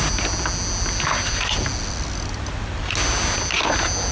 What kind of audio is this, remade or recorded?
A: recorded